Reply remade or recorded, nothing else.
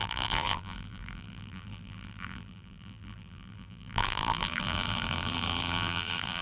remade